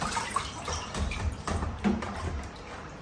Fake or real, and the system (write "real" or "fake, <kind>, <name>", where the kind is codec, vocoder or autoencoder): fake, vocoder, BigVGAN v2